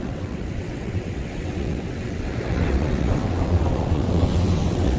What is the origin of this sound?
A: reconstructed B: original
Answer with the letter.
A